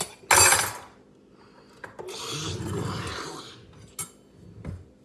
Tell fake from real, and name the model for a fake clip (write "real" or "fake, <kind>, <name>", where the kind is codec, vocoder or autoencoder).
real